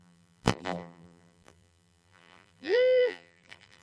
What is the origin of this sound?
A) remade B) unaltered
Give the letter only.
A